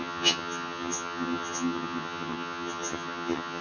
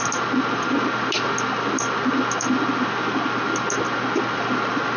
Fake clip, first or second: first